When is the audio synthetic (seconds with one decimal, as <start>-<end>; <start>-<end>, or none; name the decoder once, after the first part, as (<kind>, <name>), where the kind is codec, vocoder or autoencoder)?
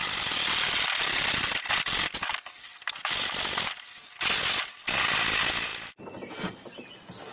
none